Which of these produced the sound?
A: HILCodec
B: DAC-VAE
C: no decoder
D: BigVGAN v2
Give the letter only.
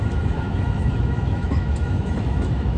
B